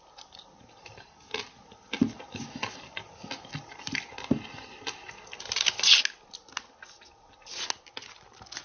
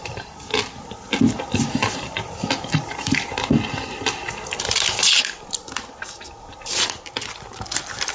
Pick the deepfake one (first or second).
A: second